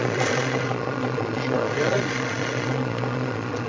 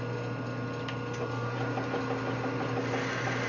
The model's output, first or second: first